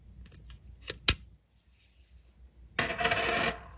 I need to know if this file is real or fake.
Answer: real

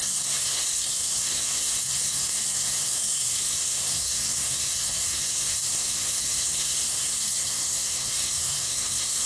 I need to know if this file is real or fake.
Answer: fake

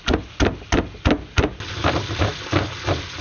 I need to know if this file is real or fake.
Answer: real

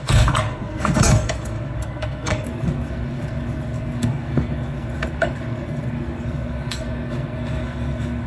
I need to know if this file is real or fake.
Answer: fake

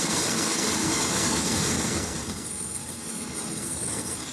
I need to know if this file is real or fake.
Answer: fake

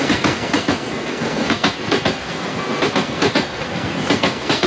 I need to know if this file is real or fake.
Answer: fake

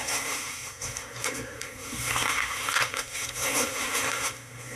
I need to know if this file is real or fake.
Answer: fake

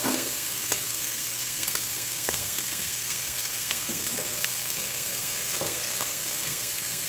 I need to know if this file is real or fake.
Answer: fake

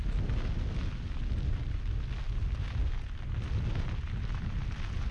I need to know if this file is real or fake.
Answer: real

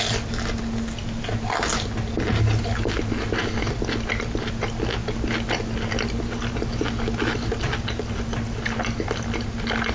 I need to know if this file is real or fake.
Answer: real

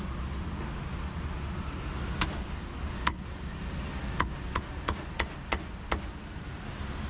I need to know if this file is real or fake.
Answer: real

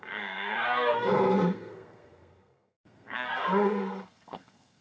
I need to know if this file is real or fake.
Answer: fake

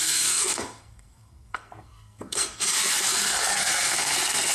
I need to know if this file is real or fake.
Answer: fake